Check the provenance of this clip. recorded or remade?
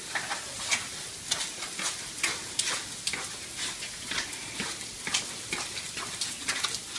recorded